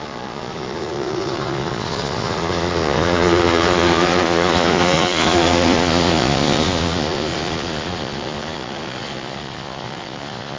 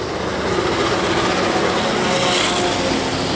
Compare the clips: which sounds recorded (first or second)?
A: second